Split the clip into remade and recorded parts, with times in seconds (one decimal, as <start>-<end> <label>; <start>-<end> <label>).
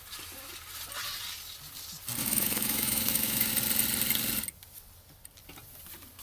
0.0-2.2 recorded; 2.2-3.5 remade; 3.5-6.2 recorded